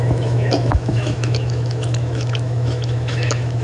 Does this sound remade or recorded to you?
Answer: remade